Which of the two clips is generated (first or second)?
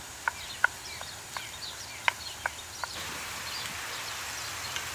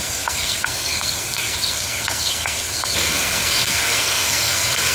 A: second